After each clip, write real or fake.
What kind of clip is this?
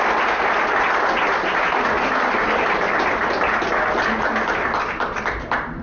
real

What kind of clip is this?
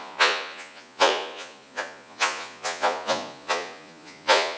fake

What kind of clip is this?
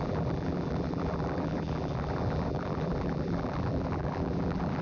fake